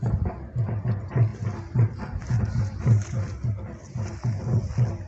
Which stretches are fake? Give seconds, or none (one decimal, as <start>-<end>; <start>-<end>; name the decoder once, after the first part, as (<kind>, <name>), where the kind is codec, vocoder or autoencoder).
none